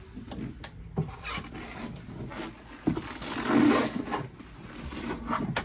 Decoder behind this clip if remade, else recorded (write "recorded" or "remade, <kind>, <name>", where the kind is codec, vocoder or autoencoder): recorded